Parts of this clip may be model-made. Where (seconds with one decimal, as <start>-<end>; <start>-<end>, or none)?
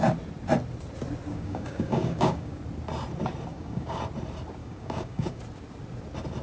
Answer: 1.3-2.6; 3.5-4.0; 4.6-5.4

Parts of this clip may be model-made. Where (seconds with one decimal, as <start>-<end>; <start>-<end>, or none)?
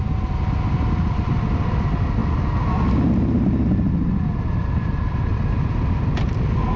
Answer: none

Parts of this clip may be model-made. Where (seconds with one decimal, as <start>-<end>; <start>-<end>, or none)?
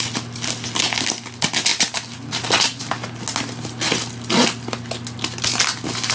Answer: none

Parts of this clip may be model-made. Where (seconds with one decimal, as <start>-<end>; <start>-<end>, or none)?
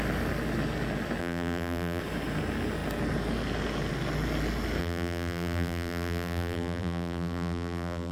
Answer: 1.2-2.0; 4.8-8.1